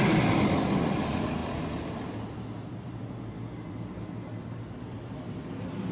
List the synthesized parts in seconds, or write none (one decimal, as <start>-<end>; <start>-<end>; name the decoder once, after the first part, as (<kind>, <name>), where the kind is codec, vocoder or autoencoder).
none